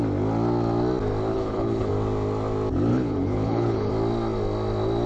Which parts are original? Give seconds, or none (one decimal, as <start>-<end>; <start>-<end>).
0.0-1.3; 1.9-2.9; 3.9-5.1